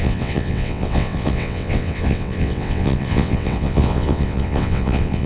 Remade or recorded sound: remade